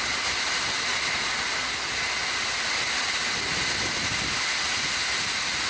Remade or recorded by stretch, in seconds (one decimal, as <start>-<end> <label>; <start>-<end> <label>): 0.0-0.9 remade; 0.9-1.6 recorded; 1.6-2.2 remade; 2.2-4.3 recorded; 4.3-5.7 remade

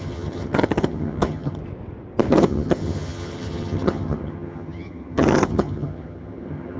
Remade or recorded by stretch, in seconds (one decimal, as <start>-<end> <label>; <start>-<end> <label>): 0.0-1.6 remade; 1.6-2.3 recorded; 2.3-6.8 remade

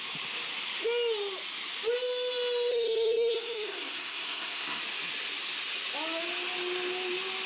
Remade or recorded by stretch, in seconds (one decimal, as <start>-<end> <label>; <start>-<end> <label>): 0.0-2.7 recorded; 2.7-4.8 remade; 4.8-7.5 recorded

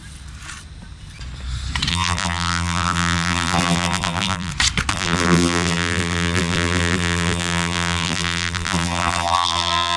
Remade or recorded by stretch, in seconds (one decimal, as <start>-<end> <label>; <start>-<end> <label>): 0.0-1.9 recorded; 1.9-4.5 remade; 4.5-4.9 recorded; 4.9-10.0 remade

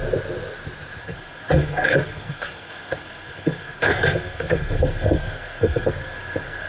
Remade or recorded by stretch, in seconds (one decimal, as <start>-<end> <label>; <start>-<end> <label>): 0.0-1.0 recorded; 1.0-6.7 remade

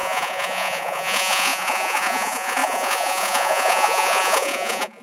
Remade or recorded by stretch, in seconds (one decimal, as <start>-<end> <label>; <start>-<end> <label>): 0.0-5.0 remade

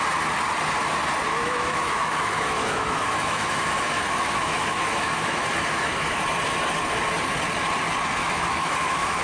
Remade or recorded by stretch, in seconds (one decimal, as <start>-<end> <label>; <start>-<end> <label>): 0.0-1.3 recorded; 1.3-6.2 remade; 6.2-8.2 recorded; 8.2-9.2 remade

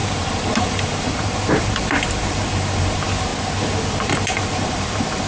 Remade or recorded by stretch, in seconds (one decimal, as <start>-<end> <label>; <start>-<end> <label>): 0.0-3.3 remade; 3.3-3.9 recorded; 3.9-5.3 remade